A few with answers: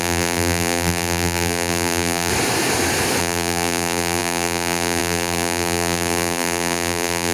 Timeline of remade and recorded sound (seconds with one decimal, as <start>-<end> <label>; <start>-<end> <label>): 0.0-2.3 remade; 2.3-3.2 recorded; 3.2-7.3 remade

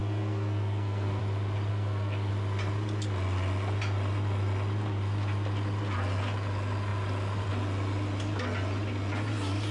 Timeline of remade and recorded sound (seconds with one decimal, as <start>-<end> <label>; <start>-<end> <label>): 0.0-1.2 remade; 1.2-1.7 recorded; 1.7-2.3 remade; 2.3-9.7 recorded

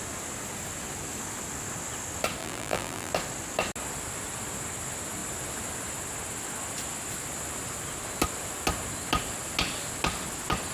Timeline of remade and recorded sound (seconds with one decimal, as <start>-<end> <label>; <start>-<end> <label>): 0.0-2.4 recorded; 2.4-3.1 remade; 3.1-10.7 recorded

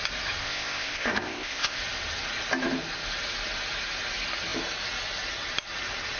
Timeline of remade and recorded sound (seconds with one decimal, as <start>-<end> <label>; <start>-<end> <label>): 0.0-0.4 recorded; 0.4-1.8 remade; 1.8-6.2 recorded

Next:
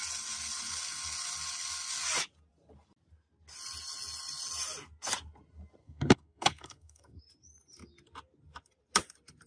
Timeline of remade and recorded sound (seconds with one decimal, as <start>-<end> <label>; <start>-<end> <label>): 0.0-5.8 recorded; 5.8-7.2 remade; 7.2-9.5 recorded